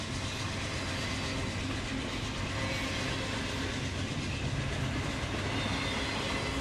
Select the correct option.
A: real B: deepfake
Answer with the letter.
A